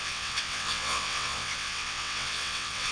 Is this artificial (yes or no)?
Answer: yes